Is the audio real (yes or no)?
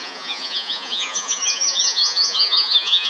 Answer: no